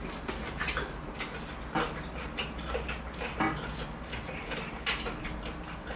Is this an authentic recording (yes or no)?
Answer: yes